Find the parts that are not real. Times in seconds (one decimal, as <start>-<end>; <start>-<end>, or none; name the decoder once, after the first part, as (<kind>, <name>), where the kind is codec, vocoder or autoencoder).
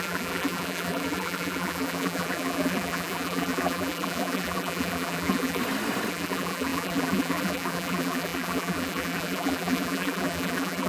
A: 0.0-5.6 (vocoder, BigVGAN v2); 6.1-10.9